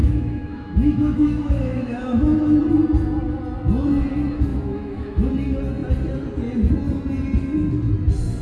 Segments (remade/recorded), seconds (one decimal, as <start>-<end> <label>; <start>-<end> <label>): 0.0-2.6 remade; 2.6-4.5 recorded; 4.5-5.3 remade; 5.3-8.4 recorded